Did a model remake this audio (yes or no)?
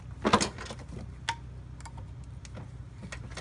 no